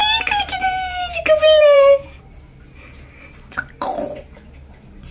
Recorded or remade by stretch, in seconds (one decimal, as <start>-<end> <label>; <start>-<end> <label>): 0.0-2.2 remade; 2.2-5.1 recorded